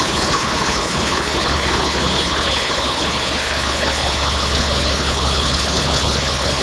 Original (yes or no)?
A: no